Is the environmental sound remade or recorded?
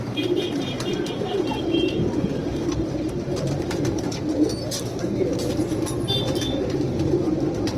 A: remade